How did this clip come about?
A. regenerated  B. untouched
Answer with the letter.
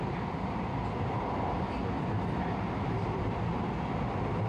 B